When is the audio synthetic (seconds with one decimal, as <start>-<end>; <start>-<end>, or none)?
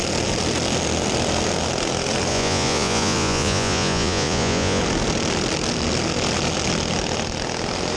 2.3-4.8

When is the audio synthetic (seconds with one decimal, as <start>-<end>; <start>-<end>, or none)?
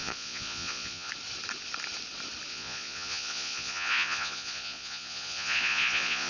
0.0-1.1; 2.5-6.3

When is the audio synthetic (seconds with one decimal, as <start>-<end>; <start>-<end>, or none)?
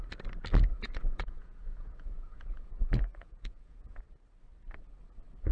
0.7-4.0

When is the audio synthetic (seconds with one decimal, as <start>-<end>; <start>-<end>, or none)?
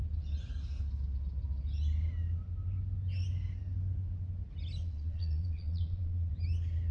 4.8-6.3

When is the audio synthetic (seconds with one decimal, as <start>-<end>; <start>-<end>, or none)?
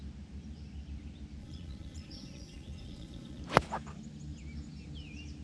1.4-3.4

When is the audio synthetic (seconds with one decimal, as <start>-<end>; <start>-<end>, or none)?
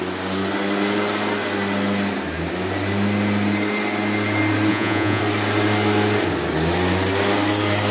4.7-5.2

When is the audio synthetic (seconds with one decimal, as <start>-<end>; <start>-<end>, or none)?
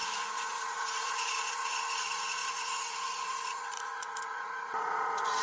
0.0-5.4